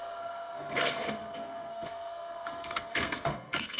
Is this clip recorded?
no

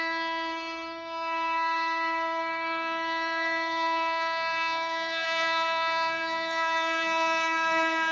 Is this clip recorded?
no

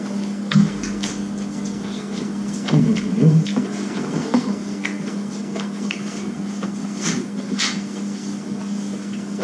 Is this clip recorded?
no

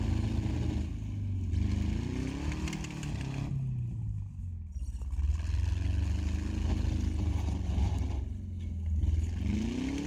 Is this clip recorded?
yes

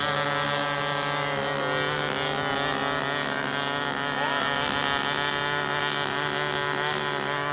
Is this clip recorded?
yes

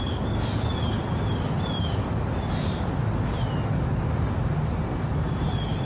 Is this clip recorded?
yes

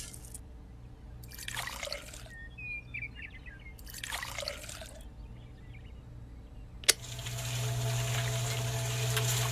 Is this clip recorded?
yes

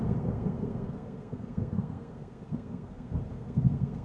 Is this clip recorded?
no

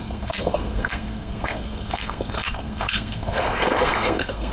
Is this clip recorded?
no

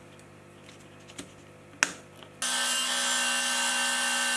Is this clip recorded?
yes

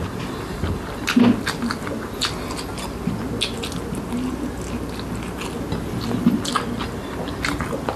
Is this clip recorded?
yes